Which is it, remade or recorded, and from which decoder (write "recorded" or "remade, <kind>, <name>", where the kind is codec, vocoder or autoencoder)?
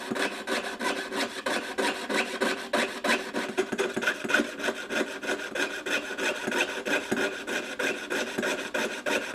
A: recorded